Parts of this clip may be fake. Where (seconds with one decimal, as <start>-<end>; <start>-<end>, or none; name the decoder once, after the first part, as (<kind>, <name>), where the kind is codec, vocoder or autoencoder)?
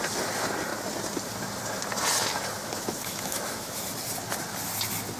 2.6-3.8 (autoencoder, DAC-VAE)